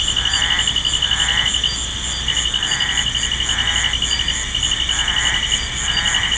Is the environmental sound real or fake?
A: real